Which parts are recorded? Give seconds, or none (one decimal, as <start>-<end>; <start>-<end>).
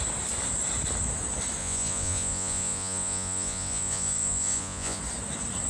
0.0-1.6; 5.0-5.7